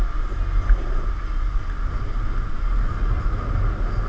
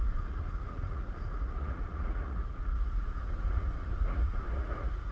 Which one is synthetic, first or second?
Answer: second